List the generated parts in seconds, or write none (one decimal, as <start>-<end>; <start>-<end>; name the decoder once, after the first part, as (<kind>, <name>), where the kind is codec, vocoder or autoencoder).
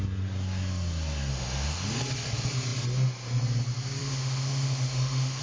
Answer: 1.3-2.0 (autoencoder, DAC-VAE); 4.0-5.4